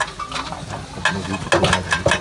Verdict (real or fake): real